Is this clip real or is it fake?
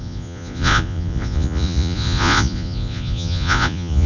fake